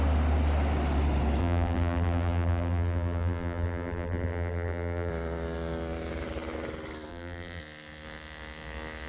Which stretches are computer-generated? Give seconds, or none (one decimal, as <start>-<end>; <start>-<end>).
1.4-5.1; 7.1-7.6